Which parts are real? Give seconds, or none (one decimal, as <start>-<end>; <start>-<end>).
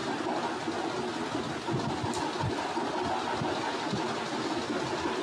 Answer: 0.0-5.2